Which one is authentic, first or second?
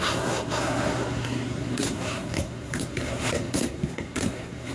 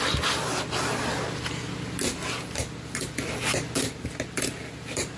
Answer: second